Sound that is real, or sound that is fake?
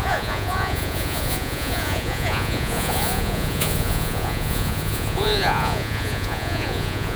fake